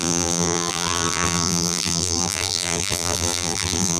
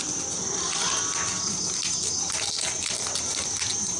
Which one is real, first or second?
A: second